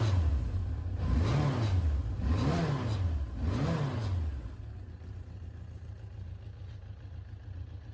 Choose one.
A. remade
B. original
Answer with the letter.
B